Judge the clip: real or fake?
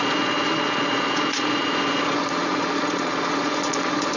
fake